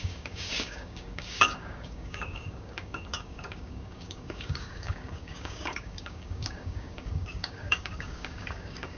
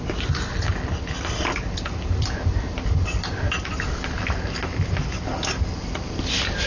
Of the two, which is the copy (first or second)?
first